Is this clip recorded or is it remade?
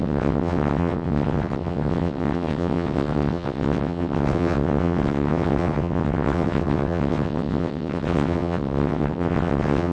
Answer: remade